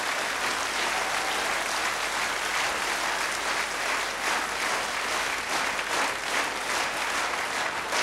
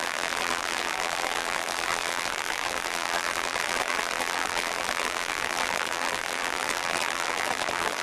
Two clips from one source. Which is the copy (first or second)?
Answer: second